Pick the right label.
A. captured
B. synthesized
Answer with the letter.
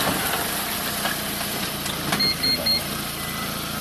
A